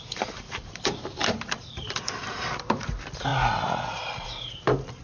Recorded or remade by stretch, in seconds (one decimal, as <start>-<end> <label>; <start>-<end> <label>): 0.0-3.3 remade; 3.3-3.9 recorded; 3.9-5.0 remade